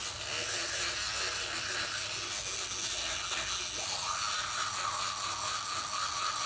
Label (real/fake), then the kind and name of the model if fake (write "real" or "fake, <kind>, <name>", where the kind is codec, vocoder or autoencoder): real